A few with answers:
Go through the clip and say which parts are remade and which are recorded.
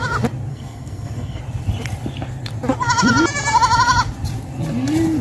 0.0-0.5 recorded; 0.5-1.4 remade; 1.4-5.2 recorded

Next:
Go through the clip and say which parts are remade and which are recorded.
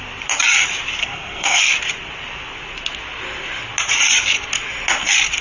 0.0-1.0 recorded; 1.0-1.6 remade; 1.6-5.4 recorded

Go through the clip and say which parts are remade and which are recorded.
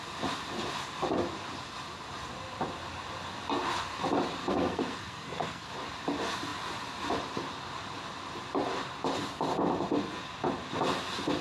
0.0-4.4 recorded; 4.4-5.7 remade; 5.7-11.4 recorded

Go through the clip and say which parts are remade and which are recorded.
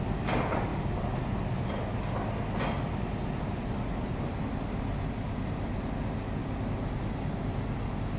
0.0-8.2 recorded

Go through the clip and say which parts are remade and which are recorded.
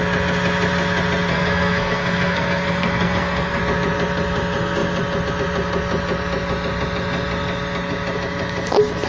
0.0-1.3 recorded; 1.3-3.6 remade; 3.6-9.1 recorded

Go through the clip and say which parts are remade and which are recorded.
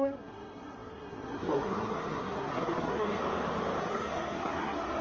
0.0-3.2 remade; 3.2-3.8 recorded; 3.8-5.0 remade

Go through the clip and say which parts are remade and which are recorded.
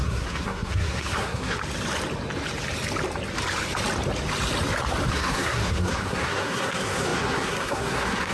0.0-1.6 remade; 1.6-5.1 recorded; 5.1-8.3 remade